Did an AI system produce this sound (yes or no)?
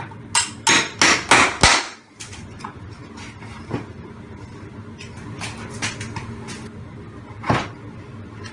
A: no